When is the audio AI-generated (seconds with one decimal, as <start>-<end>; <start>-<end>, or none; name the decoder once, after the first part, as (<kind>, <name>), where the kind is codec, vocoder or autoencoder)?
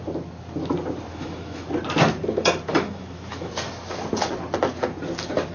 1.1-1.7 (autoencoder, DAC-VAE); 2.7-3.5